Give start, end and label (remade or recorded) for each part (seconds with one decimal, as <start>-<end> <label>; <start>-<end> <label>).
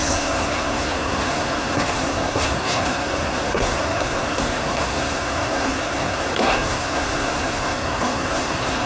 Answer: 0.0-8.9 remade